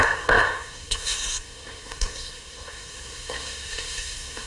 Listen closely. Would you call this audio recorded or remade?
remade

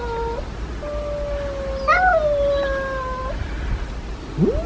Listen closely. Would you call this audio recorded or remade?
recorded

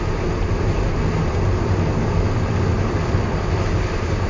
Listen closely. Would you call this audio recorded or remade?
recorded